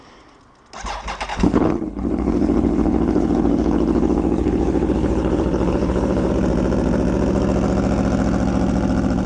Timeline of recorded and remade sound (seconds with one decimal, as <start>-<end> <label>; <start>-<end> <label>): 0.0-1.3 recorded; 1.3-6.3 remade; 6.3-9.3 recorded